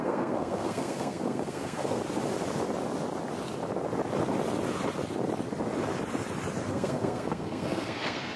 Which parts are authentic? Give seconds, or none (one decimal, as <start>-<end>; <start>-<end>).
2.0-6.7